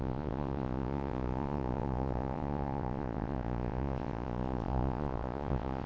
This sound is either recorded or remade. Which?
remade